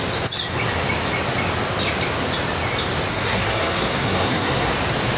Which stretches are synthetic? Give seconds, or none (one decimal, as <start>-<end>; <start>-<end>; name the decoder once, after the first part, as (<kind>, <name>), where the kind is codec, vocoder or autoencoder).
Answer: 3.1-4.7 (codec, SNAC)